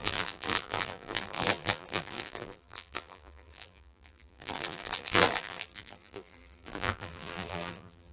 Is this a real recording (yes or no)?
no